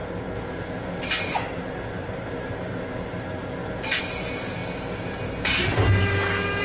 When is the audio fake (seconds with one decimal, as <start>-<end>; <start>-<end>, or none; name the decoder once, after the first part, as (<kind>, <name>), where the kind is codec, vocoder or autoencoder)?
none